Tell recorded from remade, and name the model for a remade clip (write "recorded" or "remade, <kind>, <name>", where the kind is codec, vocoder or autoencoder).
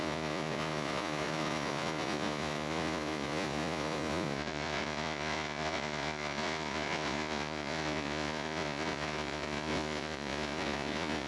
remade, vocoder, Vocos